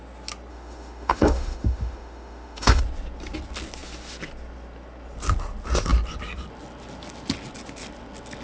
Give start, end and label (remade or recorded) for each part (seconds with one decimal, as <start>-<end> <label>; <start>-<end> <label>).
0.0-0.5 recorded; 0.5-2.8 remade; 2.8-8.4 recorded